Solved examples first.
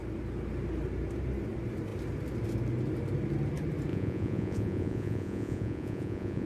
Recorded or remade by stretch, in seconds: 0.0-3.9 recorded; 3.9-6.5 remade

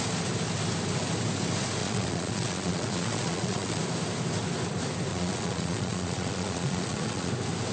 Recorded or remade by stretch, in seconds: 0.0-1.8 recorded; 1.8-3.8 remade; 3.8-5.1 recorded; 5.1-7.3 remade; 7.3-7.7 recorded

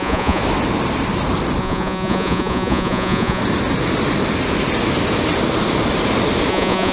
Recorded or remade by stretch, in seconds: 0.0-0.4 remade; 0.4-1.6 recorded; 1.6-3.4 remade; 3.4-6.5 recorded; 6.5-6.9 remade

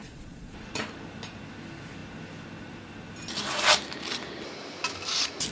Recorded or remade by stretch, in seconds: 0.0-0.8 remade; 0.8-5.5 recorded

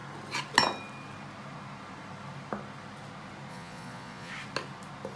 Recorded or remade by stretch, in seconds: 0.0-3.5 recorded; 3.5-4.3 remade; 4.3-5.2 recorded

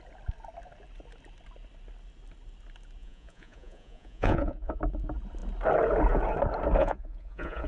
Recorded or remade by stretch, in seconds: 0.0-3.0 recorded; 3.0-4.8 remade; 4.8-6.8 recorded; 6.8-7.7 remade

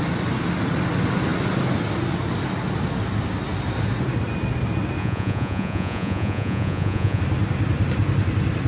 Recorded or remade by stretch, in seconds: 0.0-5.0 recorded; 5.0-7.2 remade; 7.2-8.7 recorded

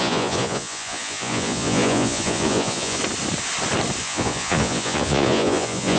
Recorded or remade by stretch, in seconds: 0.0-3.0 remade; 3.0-4.0 recorded; 4.0-6.0 remade